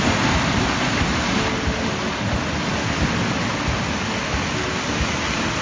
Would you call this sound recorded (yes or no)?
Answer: yes